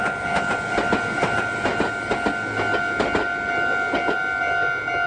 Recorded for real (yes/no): yes